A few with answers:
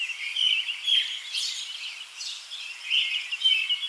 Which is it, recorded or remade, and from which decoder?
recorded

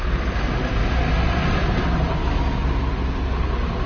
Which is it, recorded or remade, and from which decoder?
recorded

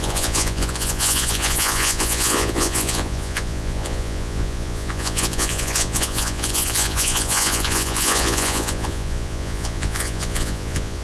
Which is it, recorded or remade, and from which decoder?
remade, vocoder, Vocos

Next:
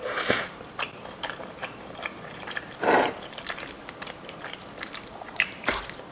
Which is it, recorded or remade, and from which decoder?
remade, vocoder, BigVGAN v2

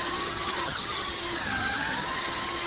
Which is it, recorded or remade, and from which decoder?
remade, vocoder, HiFi-GAN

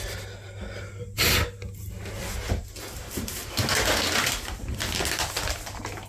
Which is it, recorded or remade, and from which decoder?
recorded